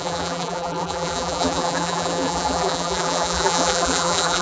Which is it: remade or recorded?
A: remade